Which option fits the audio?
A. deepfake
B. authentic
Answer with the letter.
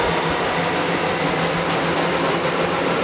B